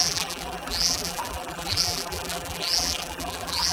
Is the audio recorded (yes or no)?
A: no